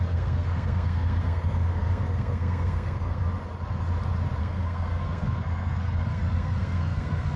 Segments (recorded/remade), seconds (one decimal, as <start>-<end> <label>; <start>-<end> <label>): 0.0-3.2 remade; 3.2-4.4 recorded; 4.4-7.4 remade